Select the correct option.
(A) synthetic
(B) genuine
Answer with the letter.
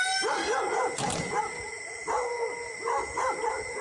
B